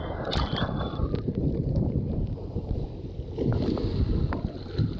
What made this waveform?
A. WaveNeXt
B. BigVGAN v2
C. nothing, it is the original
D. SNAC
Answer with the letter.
C